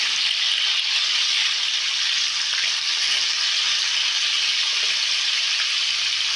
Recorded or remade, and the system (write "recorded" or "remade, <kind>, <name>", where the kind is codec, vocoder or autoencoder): recorded